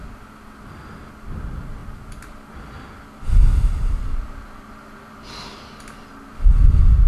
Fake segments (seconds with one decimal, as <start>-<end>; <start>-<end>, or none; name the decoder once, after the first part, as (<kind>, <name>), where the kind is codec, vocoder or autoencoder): none